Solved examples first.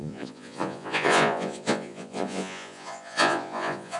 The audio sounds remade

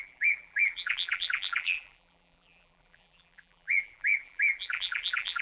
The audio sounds remade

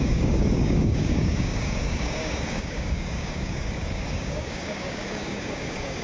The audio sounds remade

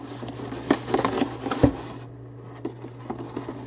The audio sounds recorded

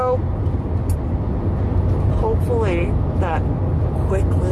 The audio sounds recorded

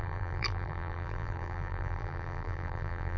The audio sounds remade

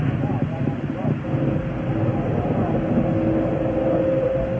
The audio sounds recorded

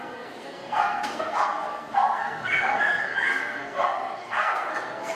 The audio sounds remade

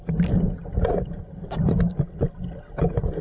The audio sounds recorded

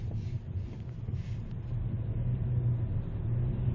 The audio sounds recorded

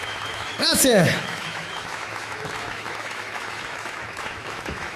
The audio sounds remade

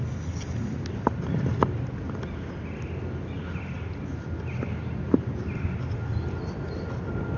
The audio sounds recorded